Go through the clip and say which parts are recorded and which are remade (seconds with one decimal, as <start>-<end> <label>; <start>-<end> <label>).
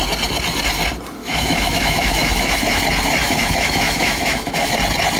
0.0-1.2 recorded; 1.2-2.8 remade; 2.8-3.2 recorded; 3.2-4.7 remade; 4.7-5.2 recorded